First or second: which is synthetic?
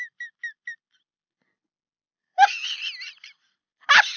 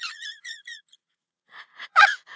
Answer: second